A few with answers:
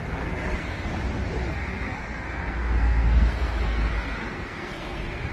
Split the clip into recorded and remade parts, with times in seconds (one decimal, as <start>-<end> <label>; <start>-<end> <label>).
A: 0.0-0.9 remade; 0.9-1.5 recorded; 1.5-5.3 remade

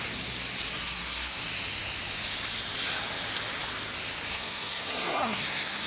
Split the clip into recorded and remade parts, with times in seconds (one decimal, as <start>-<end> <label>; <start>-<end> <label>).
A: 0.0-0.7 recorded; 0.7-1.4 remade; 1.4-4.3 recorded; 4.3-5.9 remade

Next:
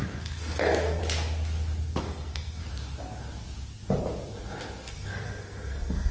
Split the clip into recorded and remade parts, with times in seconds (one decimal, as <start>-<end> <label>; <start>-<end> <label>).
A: 0.0-1.0 remade; 1.0-2.0 recorded; 2.0-2.6 remade; 2.6-4.9 recorded; 4.9-6.1 remade